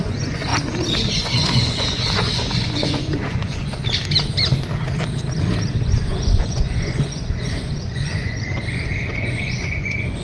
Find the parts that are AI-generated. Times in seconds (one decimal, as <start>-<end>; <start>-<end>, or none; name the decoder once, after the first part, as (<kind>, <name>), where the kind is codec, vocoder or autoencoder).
0.0-0.5 (vocoder, Vocos); 1.1-3.8; 5.8-10.2